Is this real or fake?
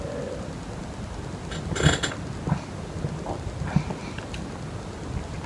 real